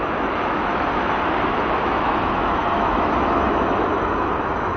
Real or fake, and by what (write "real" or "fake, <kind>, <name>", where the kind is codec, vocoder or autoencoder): fake, autoencoder, DAC-VAE